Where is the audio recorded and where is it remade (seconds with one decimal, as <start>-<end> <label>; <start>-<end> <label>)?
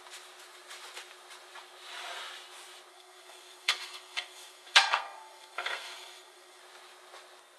0.0-2.9 recorded; 2.9-6.6 remade; 6.6-7.6 recorded